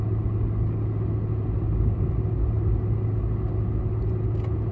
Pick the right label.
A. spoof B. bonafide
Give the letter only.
B